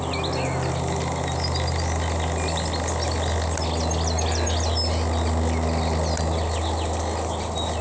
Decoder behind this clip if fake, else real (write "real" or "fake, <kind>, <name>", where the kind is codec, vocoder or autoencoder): real